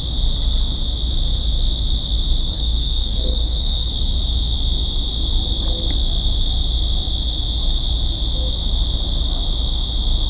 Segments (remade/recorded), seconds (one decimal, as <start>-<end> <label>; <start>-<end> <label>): 0.0-2.4 recorded; 2.4-3.9 remade; 3.9-10.3 recorded